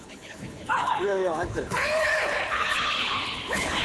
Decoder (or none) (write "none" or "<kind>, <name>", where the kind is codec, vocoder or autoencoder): codec, HILCodec